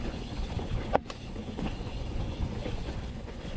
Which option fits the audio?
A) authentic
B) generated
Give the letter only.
B